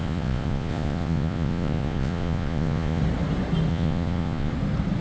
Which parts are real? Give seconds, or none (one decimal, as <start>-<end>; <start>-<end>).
3.0-3.7; 4.5-5.0